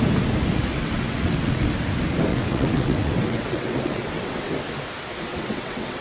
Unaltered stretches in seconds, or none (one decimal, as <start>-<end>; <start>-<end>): 0.0-0.7; 1.7-2.3; 4.5-5.3

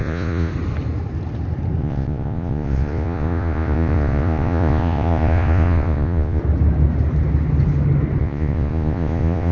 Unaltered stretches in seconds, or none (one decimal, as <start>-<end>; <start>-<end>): 0.5-1.8; 6.4-8.2

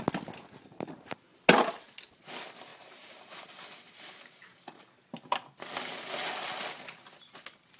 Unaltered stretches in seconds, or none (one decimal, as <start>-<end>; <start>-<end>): 0.0-2.7; 5.3-7.8

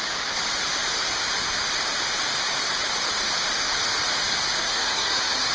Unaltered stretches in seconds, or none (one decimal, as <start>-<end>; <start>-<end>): 0.0-4.6

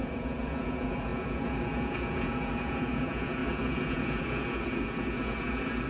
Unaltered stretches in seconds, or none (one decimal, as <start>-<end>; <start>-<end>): none